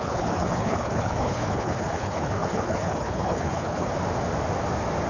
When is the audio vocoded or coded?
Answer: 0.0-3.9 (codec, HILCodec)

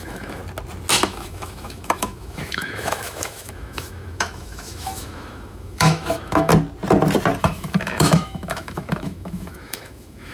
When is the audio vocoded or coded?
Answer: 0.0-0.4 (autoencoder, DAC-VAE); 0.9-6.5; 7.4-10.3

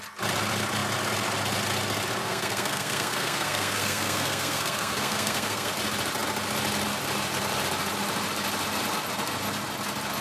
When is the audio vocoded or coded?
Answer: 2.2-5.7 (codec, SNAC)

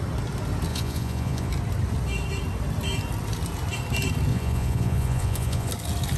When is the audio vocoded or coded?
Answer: 0.7-1.5 (vocoder, Vocos); 4.3-5.7

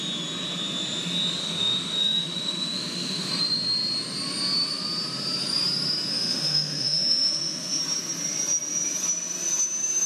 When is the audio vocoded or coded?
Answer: 1.4-3.3 (autoencoder, DAC-VAE); 6.1-7.8